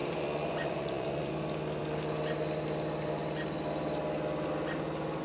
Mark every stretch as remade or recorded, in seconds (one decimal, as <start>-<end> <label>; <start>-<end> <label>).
0.0-1.3 remade; 1.3-5.2 recorded